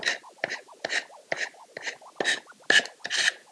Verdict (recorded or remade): recorded